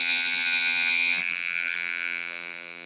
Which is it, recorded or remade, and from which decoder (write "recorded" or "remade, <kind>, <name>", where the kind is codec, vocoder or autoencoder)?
remade, vocoder, BigVGAN v2